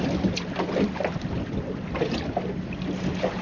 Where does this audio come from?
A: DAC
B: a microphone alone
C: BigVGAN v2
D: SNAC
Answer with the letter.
B